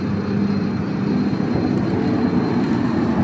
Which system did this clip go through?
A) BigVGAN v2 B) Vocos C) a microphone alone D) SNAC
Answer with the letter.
C